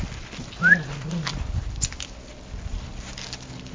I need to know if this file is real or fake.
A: real